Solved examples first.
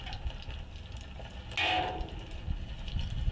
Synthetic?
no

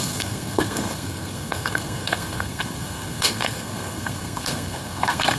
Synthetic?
yes